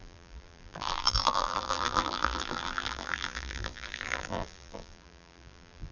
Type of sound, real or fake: fake